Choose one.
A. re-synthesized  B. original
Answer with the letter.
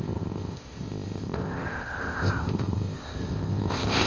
A